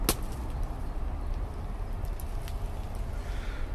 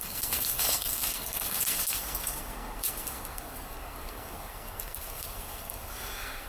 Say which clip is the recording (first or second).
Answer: first